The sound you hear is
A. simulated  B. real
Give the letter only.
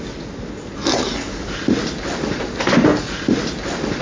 B